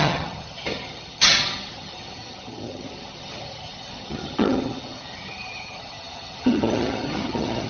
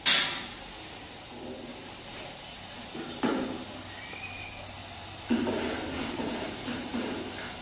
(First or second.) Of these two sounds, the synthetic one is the first